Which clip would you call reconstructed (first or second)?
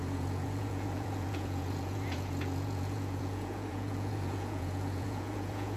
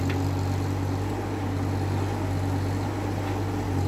first